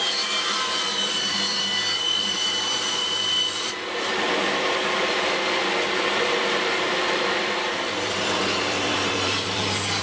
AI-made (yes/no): yes